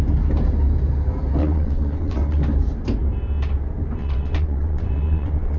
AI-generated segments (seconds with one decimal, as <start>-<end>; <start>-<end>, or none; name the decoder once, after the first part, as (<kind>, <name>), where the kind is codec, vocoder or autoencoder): 1.4-2.4 (vocoder, WaveNeXt); 4.0-5.6